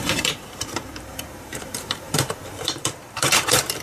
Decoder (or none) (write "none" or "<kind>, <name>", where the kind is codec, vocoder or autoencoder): vocoder, BigVGAN v2